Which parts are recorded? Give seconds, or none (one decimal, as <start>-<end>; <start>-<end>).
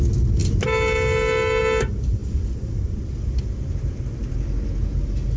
0.0-5.4